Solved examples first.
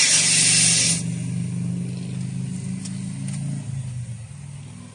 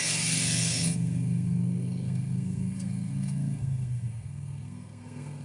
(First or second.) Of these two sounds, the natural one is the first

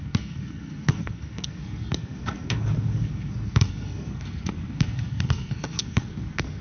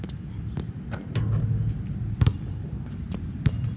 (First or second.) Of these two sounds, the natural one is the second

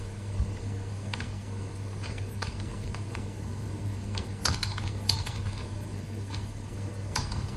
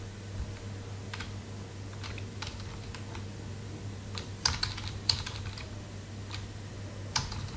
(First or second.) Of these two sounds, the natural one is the second